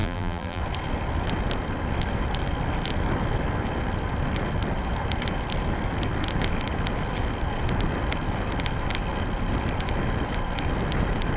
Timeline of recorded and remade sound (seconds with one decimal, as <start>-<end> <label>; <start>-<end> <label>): 0.0-0.6 remade; 0.6-11.4 recorded